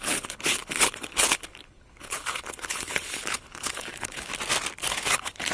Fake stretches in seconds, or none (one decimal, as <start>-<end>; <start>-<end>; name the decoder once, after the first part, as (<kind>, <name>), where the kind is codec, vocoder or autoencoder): 0.0-4.3 (codec, HILCodec); 4.9-5.5